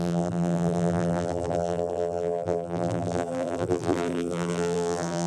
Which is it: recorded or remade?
remade